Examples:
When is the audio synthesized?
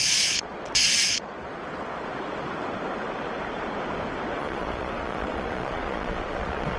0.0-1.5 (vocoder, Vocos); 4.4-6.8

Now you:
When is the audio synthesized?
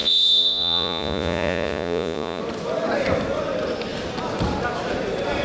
0.0-2.4 (vocoder, Vocos)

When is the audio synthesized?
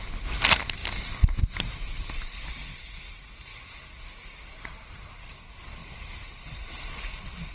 none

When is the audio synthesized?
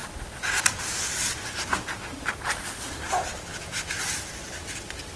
none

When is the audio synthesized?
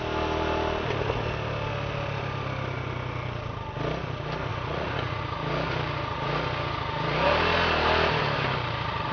4.5-5.2 (vocoder, Vocos)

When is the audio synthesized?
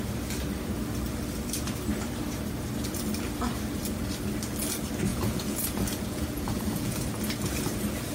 5.1-7.0 (vocoder, Vocos)